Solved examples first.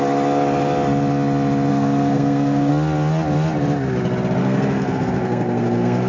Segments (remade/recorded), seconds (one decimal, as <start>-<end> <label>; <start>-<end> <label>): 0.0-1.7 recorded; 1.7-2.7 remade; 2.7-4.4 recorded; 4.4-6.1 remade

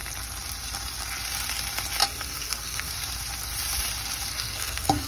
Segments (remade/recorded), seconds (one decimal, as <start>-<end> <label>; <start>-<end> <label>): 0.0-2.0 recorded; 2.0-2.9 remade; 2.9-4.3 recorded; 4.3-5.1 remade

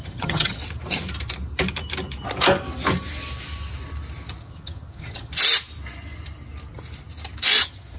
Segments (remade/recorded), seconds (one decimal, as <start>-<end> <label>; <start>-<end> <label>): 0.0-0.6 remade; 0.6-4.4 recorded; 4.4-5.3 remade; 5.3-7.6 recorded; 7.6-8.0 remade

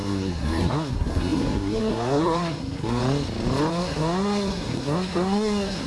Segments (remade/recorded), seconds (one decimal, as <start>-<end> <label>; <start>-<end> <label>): 0.0-3.0 remade; 3.0-3.7 recorded; 3.7-5.9 remade

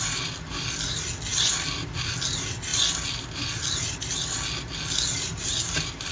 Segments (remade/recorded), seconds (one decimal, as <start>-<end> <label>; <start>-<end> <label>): 0.0-6.1 recorded

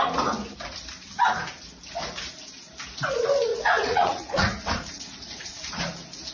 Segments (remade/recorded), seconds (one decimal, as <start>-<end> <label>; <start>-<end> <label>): 0.0-3.5 recorded; 3.5-5.8 remade; 5.8-6.3 recorded

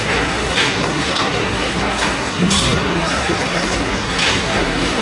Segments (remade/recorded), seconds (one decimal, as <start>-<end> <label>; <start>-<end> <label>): 0.0-5.0 remade

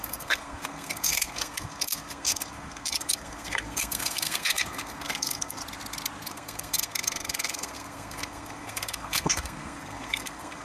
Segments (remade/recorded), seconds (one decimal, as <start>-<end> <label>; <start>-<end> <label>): 0.0-5.6 remade; 5.6-6.3 recorded; 6.3-10.6 remade